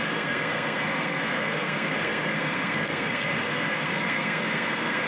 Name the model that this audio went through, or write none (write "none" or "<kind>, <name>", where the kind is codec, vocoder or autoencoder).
codec, SNAC